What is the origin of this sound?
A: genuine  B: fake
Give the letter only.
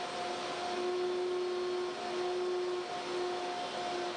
A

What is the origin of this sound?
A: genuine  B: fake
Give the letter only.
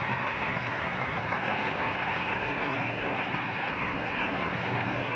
B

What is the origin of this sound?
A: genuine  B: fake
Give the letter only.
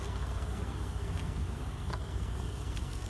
B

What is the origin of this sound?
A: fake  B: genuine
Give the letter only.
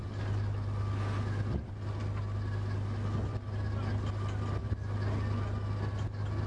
B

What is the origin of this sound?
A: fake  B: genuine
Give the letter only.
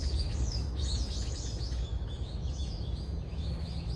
A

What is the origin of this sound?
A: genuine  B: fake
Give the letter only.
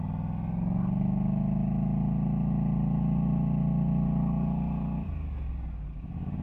A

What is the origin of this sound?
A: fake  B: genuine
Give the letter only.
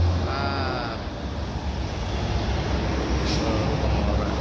B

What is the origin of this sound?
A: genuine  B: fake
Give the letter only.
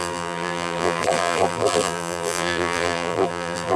B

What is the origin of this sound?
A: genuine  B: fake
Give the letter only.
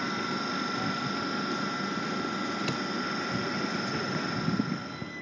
A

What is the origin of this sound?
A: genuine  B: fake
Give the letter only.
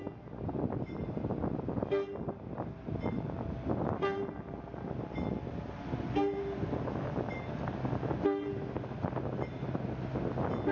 A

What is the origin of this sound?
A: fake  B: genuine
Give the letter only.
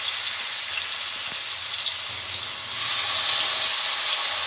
B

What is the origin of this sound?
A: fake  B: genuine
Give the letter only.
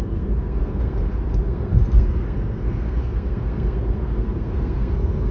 A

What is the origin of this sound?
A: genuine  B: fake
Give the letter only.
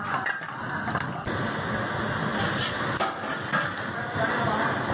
A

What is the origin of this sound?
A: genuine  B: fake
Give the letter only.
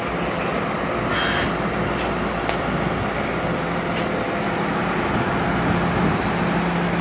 A